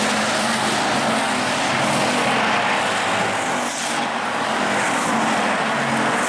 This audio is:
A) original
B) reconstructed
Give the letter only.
A